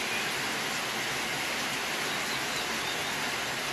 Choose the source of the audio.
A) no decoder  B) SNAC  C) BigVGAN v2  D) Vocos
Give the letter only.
A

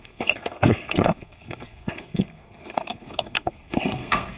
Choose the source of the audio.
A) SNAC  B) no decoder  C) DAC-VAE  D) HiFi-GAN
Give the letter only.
A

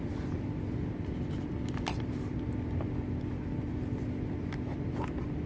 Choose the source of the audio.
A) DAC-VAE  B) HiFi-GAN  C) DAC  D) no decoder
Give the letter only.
D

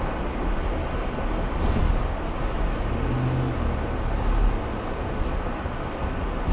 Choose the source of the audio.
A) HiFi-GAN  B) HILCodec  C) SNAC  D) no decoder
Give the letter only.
D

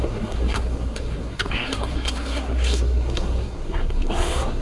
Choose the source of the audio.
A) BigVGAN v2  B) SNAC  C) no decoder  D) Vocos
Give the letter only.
B